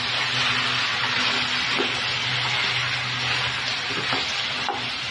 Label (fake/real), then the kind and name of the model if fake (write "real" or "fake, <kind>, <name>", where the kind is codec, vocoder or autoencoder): real